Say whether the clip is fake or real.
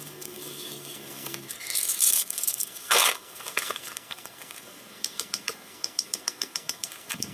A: fake